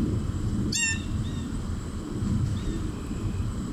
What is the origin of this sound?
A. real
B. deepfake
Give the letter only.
A